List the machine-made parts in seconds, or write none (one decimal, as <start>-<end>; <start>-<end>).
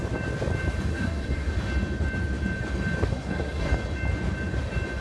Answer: 0.9-1.5; 3.1-3.7